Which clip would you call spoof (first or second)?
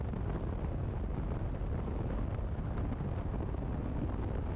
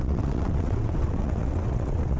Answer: second